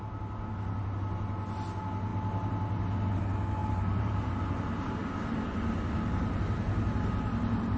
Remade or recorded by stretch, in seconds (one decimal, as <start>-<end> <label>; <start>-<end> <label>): 0.0-3.6 recorded; 3.6-7.8 remade

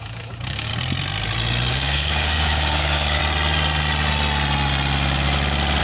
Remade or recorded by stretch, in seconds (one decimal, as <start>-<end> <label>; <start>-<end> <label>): 0.0-0.7 remade; 0.7-1.7 recorded; 1.7-3.2 remade; 3.2-5.8 recorded

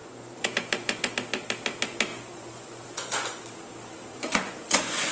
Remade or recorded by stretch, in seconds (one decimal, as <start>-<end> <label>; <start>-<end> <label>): 0.0-1.1 remade; 1.1-2.1 recorded; 2.1-3.5 remade; 3.5-4.1 recorded; 4.1-5.1 remade

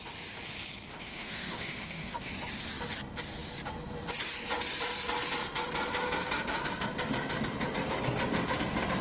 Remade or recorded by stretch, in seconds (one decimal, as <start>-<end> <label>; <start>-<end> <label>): 0.0-0.9 recorded; 0.9-2.3 remade; 2.3-9.0 recorded

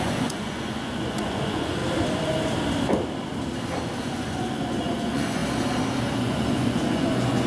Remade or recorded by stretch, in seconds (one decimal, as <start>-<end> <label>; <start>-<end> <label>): 0.0-1.8 remade; 1.8-4.0 recorded; 4.0-5.4 remade; 5.4-6.2 recorded; 6.2-7.5 remade

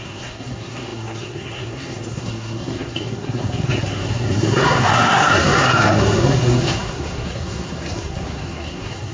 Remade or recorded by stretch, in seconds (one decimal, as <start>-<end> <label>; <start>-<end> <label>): 0.0-9.1 remade